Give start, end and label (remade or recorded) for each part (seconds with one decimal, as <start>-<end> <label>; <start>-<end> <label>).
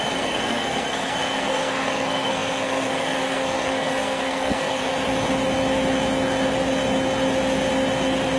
0.0-4.9 remade; 4.9-8.4 recorded